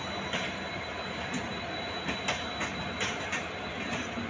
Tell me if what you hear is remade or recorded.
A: recorded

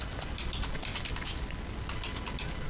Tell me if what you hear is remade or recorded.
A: recorded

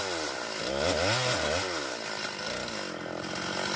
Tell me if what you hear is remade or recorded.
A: recorded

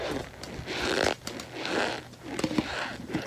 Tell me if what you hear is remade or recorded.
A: recorded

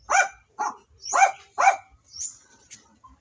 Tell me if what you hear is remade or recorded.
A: recorded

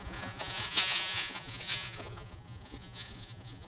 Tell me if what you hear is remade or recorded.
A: remade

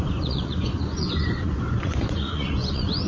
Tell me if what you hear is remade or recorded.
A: remade